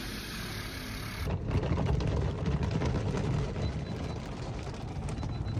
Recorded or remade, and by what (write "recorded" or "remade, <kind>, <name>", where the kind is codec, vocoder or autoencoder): recorded